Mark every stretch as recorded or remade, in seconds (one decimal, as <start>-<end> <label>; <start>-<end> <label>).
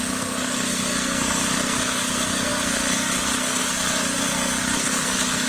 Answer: 0.0-5.5 remade